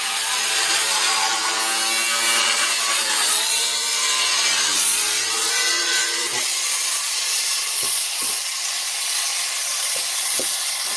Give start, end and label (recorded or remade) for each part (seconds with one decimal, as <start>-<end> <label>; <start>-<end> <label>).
0.0-1.6 remade; 1.6-2.4 recorded; 2.4-11.0 remade